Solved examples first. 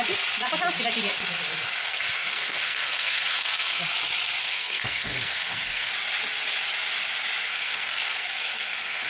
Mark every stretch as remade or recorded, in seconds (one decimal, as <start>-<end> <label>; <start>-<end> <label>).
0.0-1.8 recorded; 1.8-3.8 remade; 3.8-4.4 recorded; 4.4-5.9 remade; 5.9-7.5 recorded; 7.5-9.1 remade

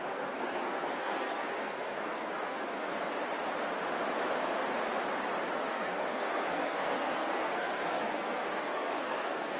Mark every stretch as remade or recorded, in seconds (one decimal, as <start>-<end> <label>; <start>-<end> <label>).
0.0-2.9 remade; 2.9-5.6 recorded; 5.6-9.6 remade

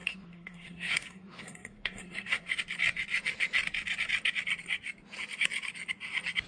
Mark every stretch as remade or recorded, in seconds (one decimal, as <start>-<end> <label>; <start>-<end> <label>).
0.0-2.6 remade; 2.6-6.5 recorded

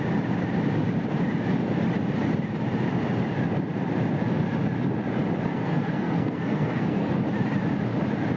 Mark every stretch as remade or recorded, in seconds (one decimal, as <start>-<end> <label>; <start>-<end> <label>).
0.0-5.5 recorded; 5.5-7.1 remade; 7.1-8.4 recorded

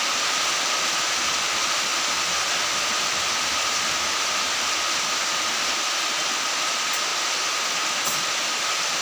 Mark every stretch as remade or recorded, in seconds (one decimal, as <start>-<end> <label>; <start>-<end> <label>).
0.0-9.0 recorded